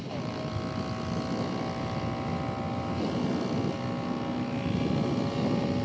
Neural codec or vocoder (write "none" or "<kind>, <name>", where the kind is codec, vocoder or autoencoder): none